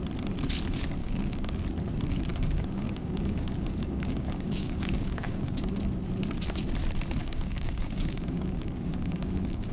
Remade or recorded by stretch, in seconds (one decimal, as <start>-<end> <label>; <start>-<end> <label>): 0.0-1.0 recorded; 1.0-1.6 remade; 1.6-2.3 recorded; 2.3-5.6 remade; 5.6-7.2 recorded; 7.2-9.7 remade